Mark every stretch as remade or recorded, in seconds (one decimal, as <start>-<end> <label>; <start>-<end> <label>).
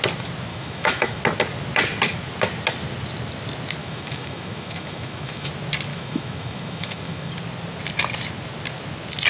0.0-0.5 recorded; 0.5-1.2 remade; 1.2-3.8 recorded; 3.8-5.5 remade; 5.5-5.9 recorded; 5.9-7.3 remade; 7.3-9.3 recorded